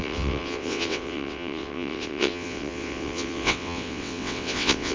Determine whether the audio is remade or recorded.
remade